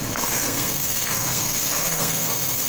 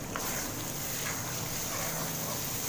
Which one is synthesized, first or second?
first